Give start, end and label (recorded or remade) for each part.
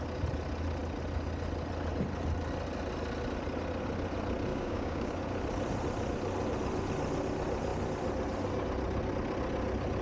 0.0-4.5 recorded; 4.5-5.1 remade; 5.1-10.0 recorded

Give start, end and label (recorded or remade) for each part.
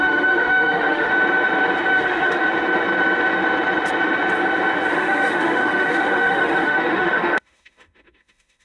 0.0-1.1 remade; 1.1-1.9 recorded; 1.9-2.4 remade; 2.4-4.9 recorded; 4.9-8.6 remade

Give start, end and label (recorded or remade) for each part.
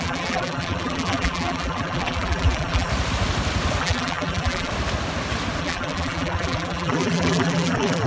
0.0-2.9 remade; 2.9-3.8 recorded; 3.8-4.7 remade; 4.7-5.6 recorded; 5.6-8.1 remade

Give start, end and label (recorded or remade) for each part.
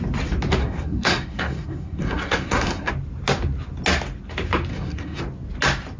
0.0-0.6 recorded; 0.6-2.9 remade; 2.9-4.7 recorded; 4.7-5.2 remade; 5.2-6.0 recorded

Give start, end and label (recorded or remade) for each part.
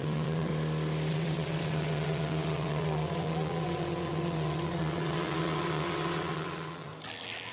0.0-0.5 remade; 0.5-1.1 recorded; 1.1-6.9 remade; 6.9-7.5 recorded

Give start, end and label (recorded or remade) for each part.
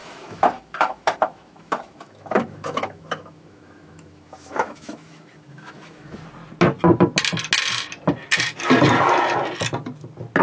0.0-6.2 remade; 6.2-10.4 recorded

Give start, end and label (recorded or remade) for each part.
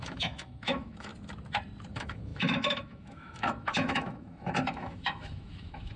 0.0-1.1 remade; 1.1-1.9 recorded; 1.9-6.0 remade